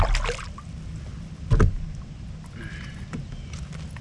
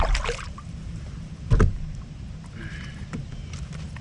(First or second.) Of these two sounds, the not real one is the second